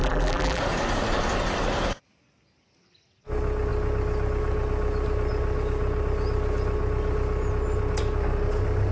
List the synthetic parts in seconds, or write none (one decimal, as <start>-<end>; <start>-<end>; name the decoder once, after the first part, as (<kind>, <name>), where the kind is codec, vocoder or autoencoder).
0.0-0.6 (vocoder, BigVGAN v2)